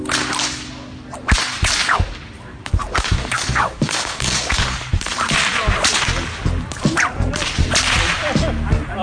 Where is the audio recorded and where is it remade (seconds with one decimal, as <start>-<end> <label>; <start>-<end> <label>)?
0.0-2.8 recorded; 2.8-4.9 remade; 4.9-9.0 recorded